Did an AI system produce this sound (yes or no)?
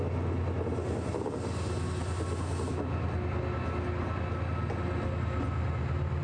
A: no